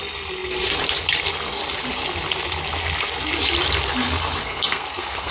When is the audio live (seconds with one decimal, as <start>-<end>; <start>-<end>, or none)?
0.0-4.4